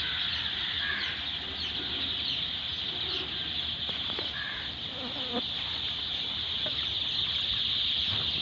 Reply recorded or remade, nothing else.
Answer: recorded